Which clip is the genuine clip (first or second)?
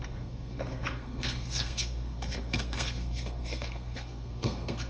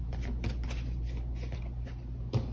second